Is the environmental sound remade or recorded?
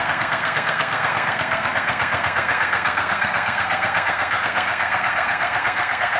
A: remade